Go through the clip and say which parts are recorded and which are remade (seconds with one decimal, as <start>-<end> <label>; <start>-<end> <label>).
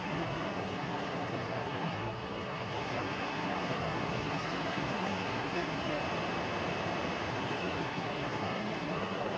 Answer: 0.0-6.0 remade; 6.0-7.3 recorded; 7.3-9.4 remade